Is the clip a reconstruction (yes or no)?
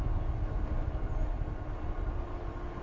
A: no